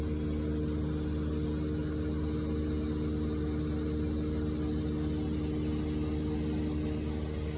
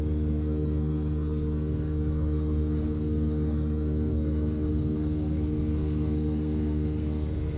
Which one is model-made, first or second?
second